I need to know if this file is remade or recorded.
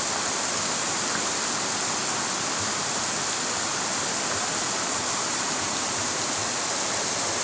recorded